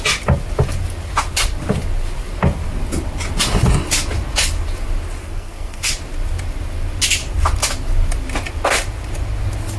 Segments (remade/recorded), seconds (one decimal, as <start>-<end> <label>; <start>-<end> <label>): 0.0-5.2 recorded; 5.2-5.9 remade; 5.9-9.8 recorded